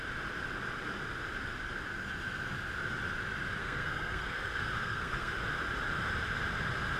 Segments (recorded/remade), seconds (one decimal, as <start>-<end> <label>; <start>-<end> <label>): 0.0-3.6 recorded; 3.6-5.3 remade; 5.3-7.0 recorded